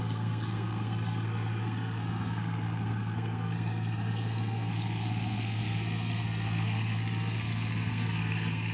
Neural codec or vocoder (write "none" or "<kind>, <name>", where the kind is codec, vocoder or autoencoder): codec, SNAC